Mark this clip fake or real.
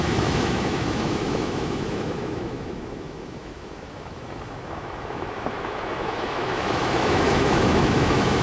fake